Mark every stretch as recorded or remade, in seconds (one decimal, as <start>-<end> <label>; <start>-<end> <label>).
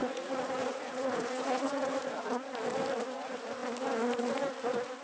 0.0-2.2 remade; 2.2-5.0 recorded